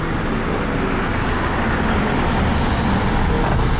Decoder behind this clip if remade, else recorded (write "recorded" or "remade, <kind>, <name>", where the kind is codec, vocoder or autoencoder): recorded